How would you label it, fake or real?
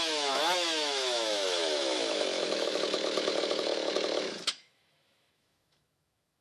fake